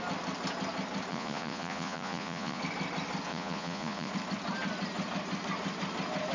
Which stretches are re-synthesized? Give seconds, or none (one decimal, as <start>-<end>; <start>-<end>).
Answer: 1.1-2.6; 3.3-4.1